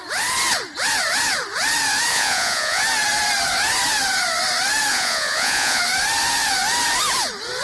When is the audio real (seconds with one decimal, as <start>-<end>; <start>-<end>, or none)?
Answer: 0.0-2.1; 2.8-4.9; 5.8-7.6